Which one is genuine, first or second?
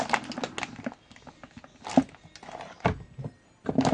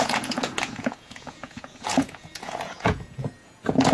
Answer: first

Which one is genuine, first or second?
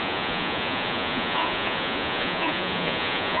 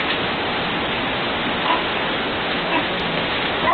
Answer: second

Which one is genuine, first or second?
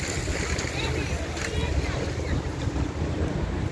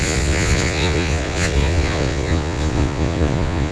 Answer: first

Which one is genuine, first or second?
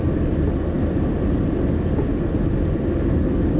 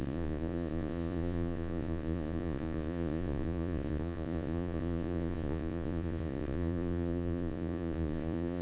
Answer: first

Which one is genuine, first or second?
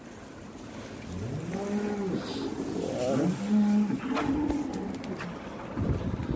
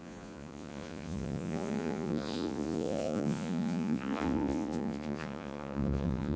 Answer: first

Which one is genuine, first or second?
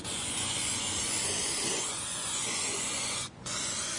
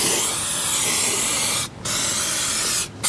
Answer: second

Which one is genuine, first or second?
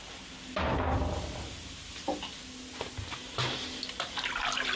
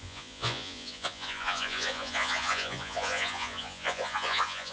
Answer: first